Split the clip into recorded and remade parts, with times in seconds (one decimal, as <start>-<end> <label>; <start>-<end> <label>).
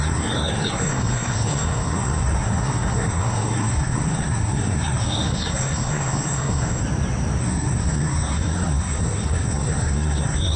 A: 0.0-6.8 remade; 6.8-7.4 recorded; 7.4-10.6 remade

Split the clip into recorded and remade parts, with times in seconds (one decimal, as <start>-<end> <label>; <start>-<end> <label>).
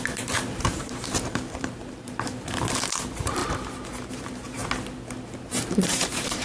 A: 0.0-4.6 remade; 4.6-5.5 recorded; 5.5-6.4 remade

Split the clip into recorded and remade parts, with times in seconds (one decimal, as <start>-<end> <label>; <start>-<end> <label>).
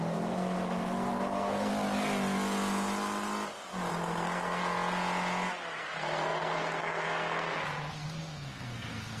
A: 0.0-1.7 remade; 1.7-3.9 recorded; 3.9-4.6 remade; 4.6-5.8 recorded; 5.8-9.2 remade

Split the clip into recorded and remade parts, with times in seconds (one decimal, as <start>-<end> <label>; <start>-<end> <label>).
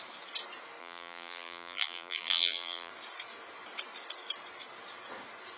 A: 0.0-0.8 recorded; 0.8-2.9 remade; 2.9-5.6 recorded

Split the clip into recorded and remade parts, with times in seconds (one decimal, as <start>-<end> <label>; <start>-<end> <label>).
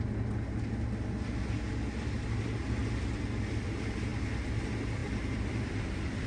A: 0.0-5.0 recorded; 5.0-6.3 remade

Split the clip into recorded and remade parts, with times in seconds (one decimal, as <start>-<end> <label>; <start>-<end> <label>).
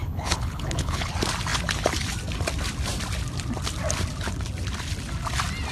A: 0.0-1.1 remade; 1.1-5.7 recorded